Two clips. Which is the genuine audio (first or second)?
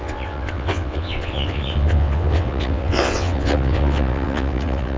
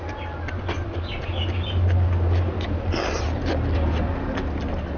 second